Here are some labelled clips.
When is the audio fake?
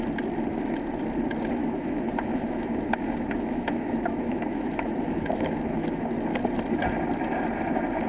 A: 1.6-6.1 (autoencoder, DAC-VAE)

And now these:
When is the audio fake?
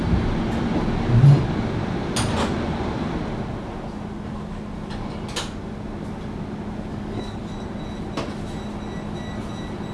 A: 6.9-7.5 (codec, DAC)